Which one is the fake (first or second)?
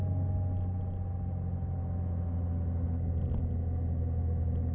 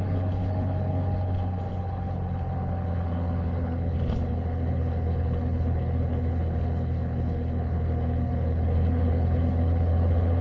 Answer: second